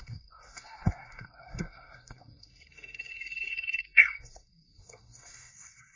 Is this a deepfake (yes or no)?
yes